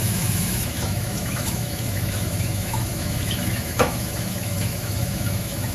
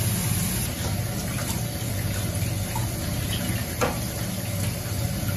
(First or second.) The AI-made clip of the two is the first